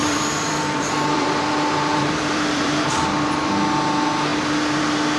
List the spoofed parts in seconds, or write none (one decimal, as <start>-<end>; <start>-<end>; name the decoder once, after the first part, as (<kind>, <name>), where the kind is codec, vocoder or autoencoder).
0.0-3.1 (vocoder, BigVGAN v2); 4.3-4.8